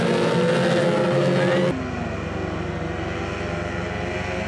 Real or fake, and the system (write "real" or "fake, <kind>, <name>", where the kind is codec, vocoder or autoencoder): real